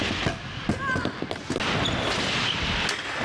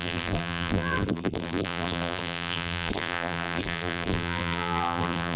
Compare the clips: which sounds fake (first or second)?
second